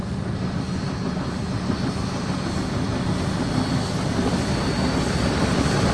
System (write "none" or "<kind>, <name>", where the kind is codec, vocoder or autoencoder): none